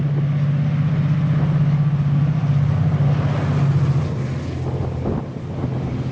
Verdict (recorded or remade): recorded